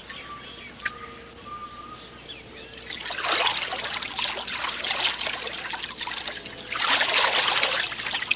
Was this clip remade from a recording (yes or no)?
no